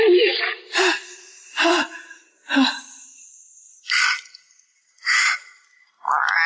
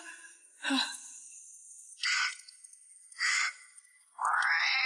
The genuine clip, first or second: first